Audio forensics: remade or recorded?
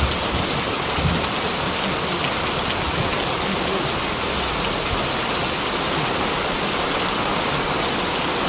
recorded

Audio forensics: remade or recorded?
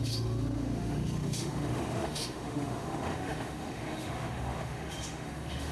remade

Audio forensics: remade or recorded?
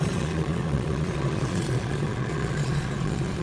remade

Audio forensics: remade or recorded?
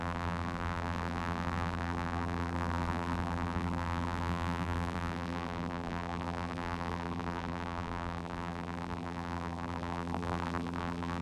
remade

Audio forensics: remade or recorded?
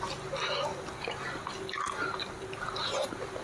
recorded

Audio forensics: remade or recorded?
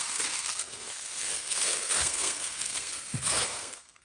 remade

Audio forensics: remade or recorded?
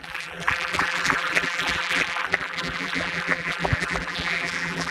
remade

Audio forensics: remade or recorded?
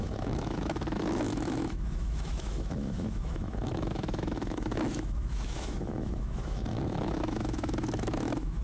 remade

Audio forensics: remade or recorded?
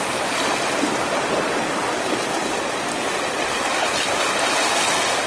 recorded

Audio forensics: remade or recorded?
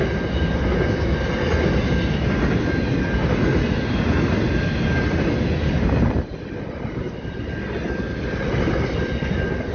recorded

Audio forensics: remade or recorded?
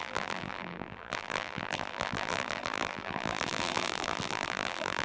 remade